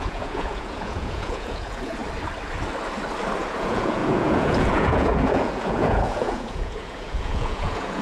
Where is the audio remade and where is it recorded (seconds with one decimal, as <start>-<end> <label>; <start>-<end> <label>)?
0.0-2.0 remade; 2.0-3.4 recorded; 3.4-8.0 remade